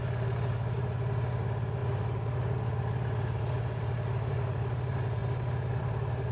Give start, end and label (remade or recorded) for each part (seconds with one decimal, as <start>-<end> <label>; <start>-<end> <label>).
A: 0.0-5.2 remade; 5.2-5.8 recorded; 5.8-6.3 remade